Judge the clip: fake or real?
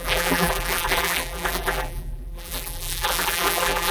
fake